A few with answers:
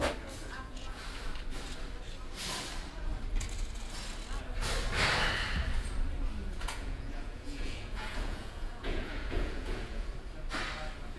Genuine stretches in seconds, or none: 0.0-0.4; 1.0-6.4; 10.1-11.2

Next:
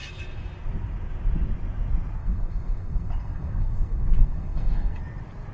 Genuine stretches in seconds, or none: 0.0-2.2; 5.0-5.5

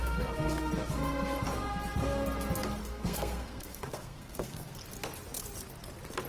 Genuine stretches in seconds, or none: 0.7-2.8; 4.7-6.3

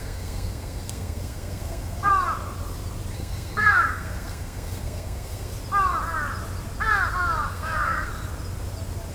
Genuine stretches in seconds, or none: 2.1-3.1; 5.5-7.5; 8.1-9.1

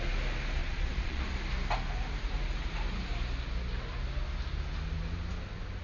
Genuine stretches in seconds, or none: 0.0-0.6; 1.2-5.8

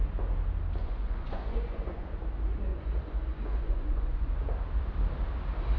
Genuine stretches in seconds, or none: 0.0-0.8; 2.1-2.7; 4.3-5.8

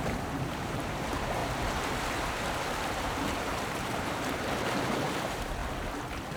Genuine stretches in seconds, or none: 1.4-2.7; 5.6-6.4

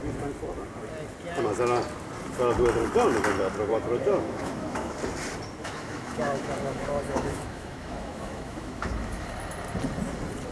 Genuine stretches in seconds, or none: 0.0-3.7; 5.0-5.6; 9.3-10.5